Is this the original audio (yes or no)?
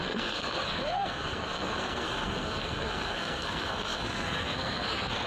no